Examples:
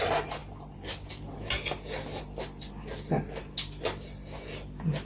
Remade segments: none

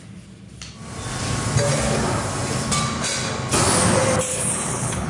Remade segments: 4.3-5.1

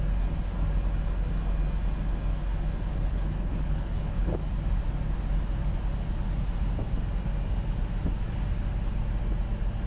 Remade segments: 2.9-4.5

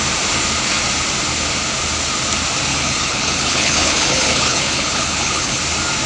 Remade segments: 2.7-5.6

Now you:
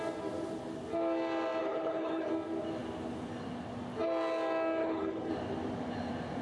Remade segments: 1.6-2.3; 4.8-5.3